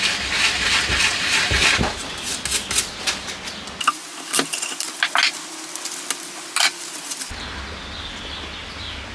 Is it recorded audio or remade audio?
recorded